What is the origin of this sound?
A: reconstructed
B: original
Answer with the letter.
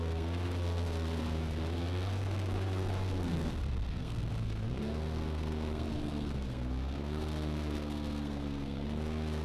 A